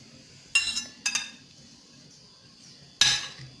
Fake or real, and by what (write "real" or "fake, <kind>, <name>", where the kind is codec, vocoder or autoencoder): real